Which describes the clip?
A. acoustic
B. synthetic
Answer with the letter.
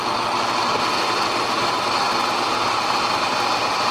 A